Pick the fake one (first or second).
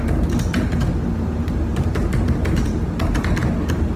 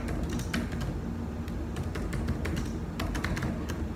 first